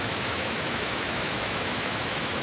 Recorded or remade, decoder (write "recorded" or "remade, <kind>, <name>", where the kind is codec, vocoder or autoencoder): remade, autoencoder, DAC-VAE